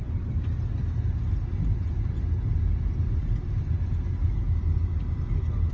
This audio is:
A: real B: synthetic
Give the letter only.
A